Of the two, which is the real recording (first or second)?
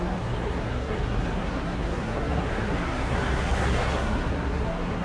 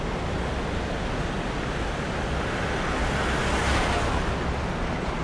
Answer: second